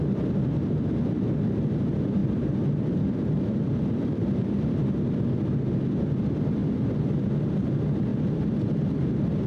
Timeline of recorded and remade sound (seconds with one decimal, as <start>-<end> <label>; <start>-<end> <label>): 0.0-2.2 recorded; 2.2-4.9 remade; 4.9-6.6 recorded; 6.6-7.5 remade; 7.5-8.1 recorded; 8.1-9.5 remade